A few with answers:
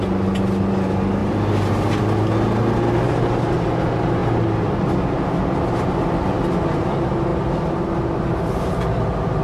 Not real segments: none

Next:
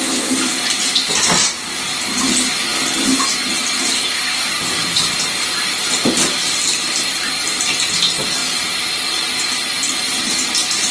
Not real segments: none

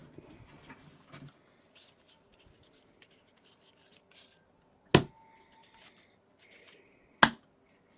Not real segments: none

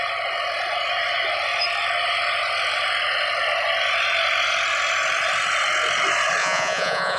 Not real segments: 6.4-7.2 (vocoder, Vocos)

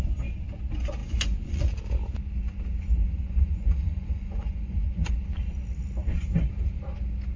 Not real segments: 1.0-1.7 (vocoder, Vocos); 3.0-5.1

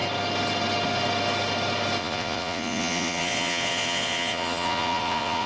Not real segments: 2.0-5.5 (vocoder, Vocos)